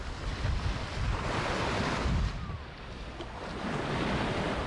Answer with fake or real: real